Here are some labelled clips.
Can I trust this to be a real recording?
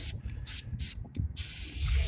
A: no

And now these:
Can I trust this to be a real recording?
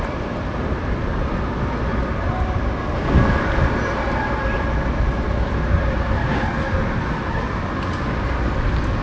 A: yes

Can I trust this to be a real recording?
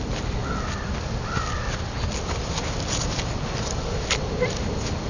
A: yes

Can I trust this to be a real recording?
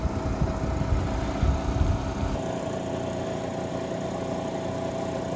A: yes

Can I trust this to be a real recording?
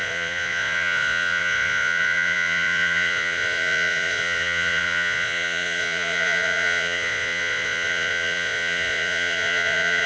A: no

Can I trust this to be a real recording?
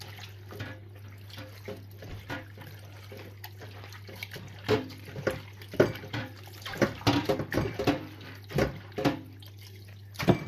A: yes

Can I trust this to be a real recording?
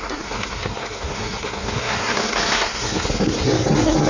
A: no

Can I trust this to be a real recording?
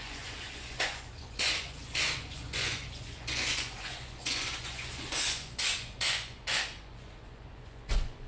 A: no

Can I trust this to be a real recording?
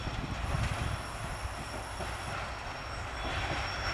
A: yes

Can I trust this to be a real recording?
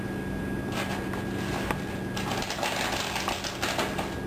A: yes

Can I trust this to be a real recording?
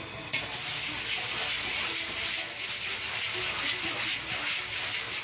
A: yes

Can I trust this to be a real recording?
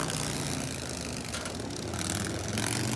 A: yes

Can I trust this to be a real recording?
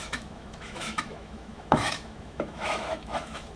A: no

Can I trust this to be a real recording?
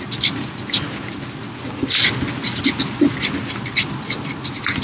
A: yes